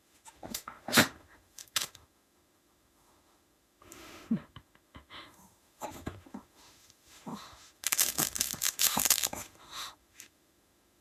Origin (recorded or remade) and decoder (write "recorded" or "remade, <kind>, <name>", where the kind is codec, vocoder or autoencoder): remade, autoencoder, DAC-VAE